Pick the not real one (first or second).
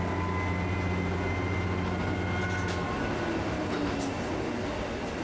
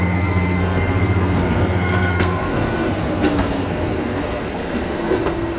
second